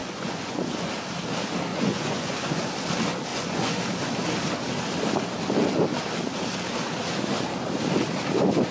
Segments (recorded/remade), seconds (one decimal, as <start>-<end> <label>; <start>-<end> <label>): 0.0-0.9 remade; 0.9-1.7 recorded; 1.7-2.6 remade; 2.6-3.3 recorded; 3.3-3.8 remade; 3.8-8.7 recorded